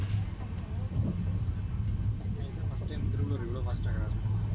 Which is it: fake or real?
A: real